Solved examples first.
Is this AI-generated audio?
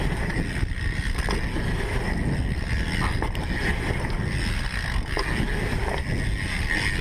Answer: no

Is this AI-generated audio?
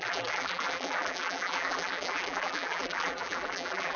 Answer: yes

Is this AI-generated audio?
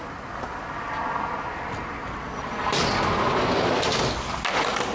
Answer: no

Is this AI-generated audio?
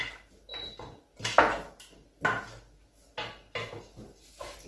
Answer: no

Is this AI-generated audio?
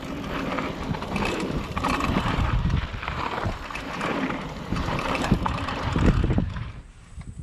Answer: yes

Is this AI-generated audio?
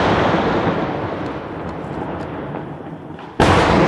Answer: no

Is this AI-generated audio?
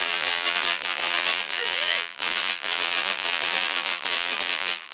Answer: yes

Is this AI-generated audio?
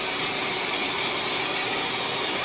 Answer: yes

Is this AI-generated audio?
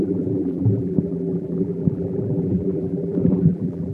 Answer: yes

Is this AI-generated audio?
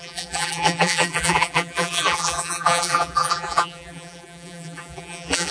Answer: yes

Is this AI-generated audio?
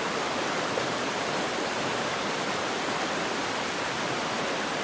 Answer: yes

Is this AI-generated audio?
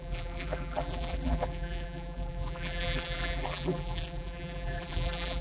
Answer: yes